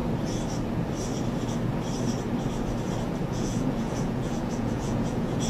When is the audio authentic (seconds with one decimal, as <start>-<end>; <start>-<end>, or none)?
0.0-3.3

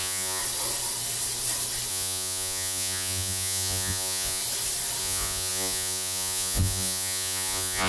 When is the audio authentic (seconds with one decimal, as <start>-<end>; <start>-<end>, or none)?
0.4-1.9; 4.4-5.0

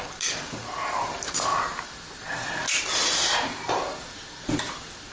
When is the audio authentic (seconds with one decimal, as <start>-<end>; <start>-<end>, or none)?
0.0-5.1

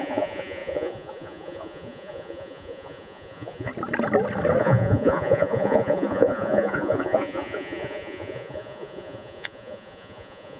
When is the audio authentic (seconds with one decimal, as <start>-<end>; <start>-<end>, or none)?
3.7-4.6